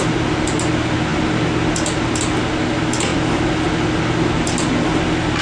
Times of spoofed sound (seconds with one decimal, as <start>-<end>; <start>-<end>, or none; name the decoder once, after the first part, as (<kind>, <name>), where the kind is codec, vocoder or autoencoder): none

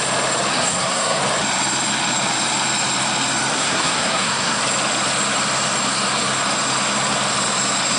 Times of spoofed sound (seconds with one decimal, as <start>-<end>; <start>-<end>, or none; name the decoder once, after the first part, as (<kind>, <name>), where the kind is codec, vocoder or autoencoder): 0.5-1.2 (codec, SNAC); 3.5-4.6

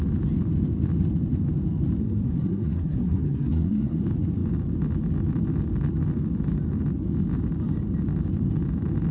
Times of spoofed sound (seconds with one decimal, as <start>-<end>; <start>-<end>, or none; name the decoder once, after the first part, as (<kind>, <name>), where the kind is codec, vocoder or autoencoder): 2.0-4.0 (codec, SNAC)

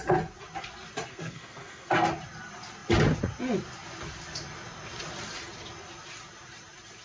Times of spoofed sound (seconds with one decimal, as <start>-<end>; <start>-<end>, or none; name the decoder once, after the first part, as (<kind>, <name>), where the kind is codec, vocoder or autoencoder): 1.1-2.1 (codec, SNAC)